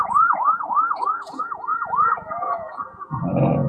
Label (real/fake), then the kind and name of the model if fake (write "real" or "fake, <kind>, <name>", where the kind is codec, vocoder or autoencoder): fake, vocoder, Vocos